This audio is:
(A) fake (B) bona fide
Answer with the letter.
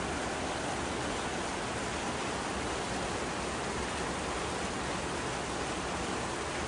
B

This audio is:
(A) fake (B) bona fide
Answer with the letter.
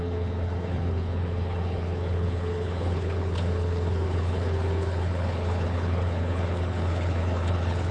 A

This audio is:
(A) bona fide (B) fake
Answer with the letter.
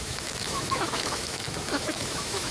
B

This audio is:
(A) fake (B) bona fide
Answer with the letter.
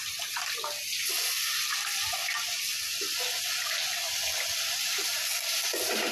B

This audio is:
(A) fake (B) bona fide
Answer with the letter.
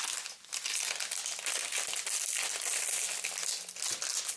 B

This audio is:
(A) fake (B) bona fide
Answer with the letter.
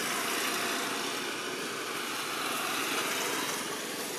B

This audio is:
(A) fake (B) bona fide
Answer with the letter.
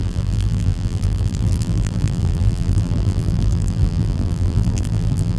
A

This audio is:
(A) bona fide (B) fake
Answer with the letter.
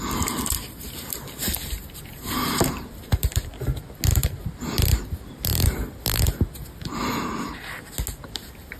A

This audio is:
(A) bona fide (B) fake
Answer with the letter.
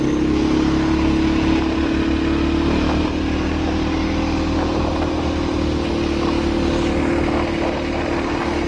A